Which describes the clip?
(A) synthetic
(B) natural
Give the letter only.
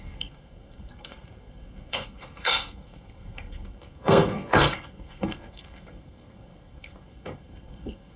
A